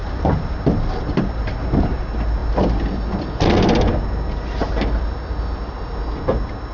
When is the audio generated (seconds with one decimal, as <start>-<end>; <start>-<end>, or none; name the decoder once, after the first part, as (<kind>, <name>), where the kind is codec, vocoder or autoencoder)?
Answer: none